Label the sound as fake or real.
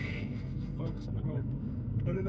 fake